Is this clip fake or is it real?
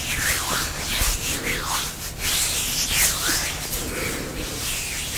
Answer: real